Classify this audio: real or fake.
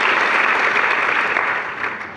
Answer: real